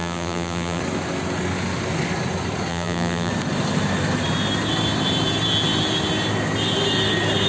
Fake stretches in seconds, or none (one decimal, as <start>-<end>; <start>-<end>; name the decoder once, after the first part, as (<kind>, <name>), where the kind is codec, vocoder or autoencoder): 0.0-0.8 (vocoder, BigVGAN v2); 2.7-3.3